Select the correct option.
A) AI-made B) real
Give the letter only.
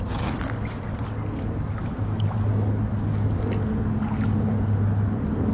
B